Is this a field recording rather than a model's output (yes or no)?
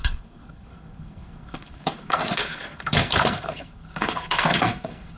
no